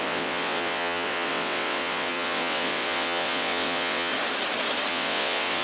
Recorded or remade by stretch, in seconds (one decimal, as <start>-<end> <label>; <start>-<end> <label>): 0.0-4.1 remade; 4.1-4.9 recorded; 4.9-5.6 remade